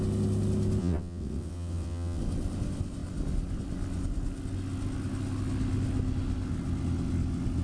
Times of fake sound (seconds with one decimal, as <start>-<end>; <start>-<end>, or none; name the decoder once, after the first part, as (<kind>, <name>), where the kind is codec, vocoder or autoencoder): 0.8-2.2 (vocoder, WaveNeXt)